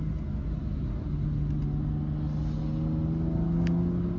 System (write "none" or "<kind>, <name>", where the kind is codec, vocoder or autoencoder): none